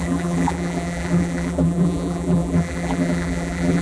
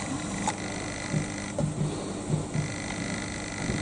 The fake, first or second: first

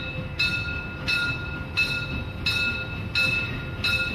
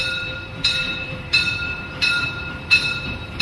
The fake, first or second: second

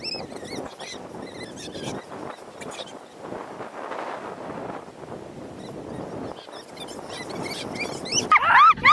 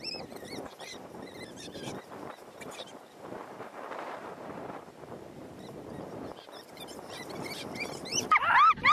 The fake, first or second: second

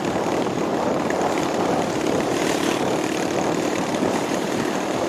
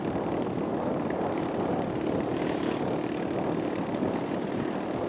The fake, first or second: first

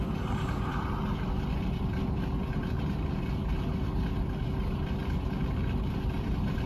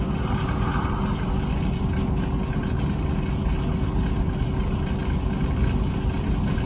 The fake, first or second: first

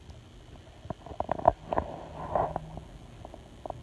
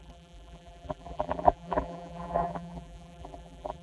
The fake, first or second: second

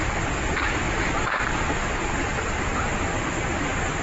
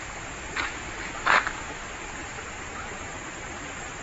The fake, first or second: first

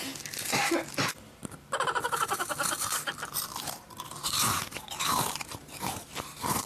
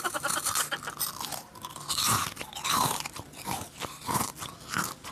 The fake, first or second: first